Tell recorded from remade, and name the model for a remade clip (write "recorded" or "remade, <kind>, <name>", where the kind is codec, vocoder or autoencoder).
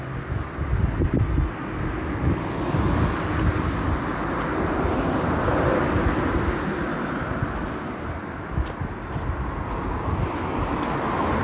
recorded